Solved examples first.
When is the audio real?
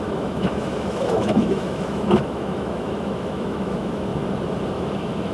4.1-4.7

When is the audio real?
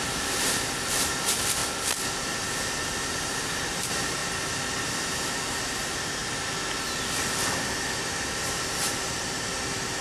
1.6-2.8; 4.2-5.1; 6.2-8.2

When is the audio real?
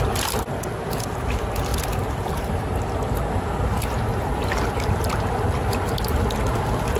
0.0-1.7; 2.6-7.0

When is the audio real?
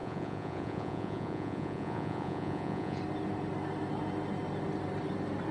3.0-5.5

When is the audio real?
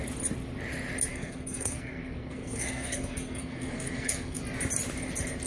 0.0-1.1; 4.4-5.5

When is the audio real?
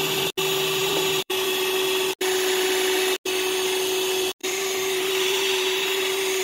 0.0-0.8; 1.6-4.4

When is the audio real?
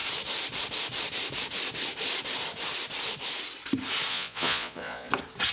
0.0-4.1; 5.1-5.5